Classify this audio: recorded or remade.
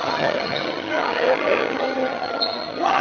remade